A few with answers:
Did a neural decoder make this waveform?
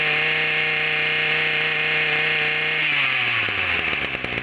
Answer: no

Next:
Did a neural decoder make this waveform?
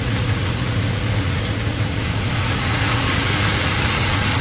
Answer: yes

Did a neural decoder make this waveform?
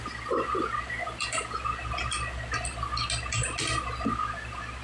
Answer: no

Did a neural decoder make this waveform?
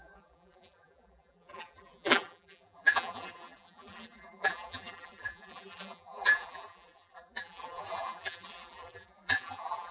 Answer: yes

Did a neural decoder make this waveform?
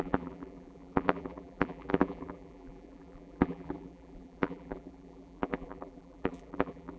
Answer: yes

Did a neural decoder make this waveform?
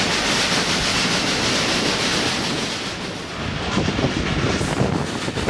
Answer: no